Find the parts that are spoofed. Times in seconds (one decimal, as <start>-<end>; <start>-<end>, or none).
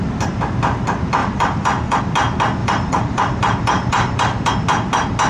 1.2-2.0; 2.6-4.5